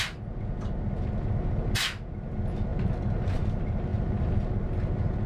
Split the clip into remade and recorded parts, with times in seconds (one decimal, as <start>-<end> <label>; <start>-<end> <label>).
0.0-5.3 recorded